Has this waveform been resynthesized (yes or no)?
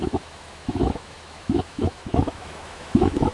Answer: yes